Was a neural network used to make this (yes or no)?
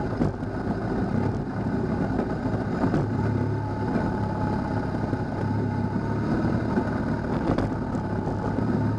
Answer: no